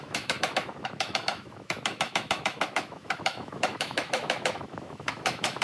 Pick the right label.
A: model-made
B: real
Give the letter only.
A